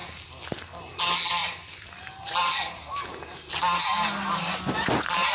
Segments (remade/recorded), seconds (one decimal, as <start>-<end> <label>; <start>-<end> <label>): 0.0-1.4 recorded; 1.4-2.0 remade; 2.0-5.3 recorded